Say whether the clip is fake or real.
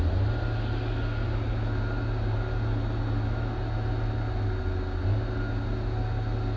real